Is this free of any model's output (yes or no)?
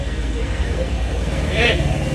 no